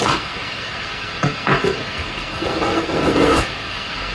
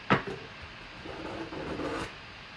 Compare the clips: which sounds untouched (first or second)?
second